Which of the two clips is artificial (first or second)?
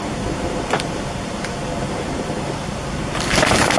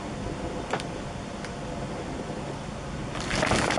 first